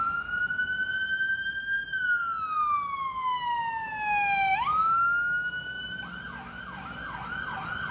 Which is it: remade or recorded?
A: recorded